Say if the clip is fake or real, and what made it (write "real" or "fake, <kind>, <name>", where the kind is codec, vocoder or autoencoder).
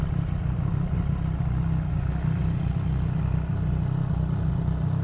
real